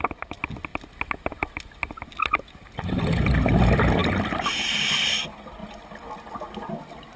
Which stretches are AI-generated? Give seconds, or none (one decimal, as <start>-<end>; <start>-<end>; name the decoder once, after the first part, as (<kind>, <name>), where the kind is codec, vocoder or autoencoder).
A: none